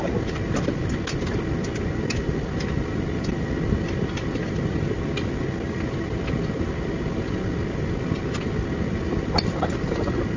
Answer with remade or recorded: recorded